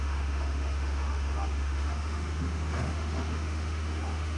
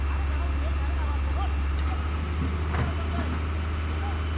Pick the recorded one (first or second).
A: second